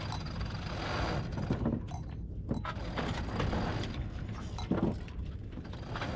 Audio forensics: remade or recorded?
recorded